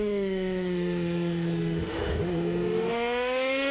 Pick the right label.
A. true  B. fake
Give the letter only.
B